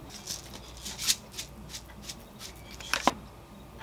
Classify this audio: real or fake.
real